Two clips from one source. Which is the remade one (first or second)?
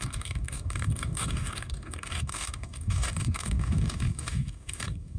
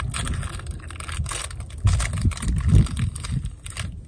first